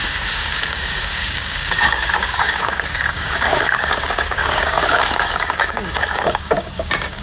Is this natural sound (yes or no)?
no